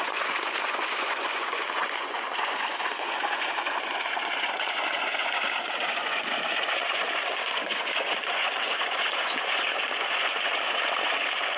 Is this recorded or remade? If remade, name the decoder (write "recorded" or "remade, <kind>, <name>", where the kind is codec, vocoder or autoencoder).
remade, vocoder, Vocos